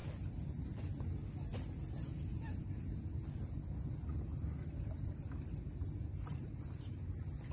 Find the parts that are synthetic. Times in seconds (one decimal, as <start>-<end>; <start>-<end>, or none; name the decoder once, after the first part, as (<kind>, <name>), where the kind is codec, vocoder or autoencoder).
none